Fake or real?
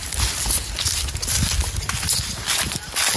real